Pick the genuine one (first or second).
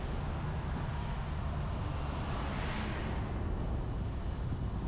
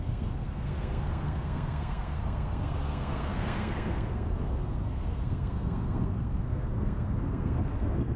first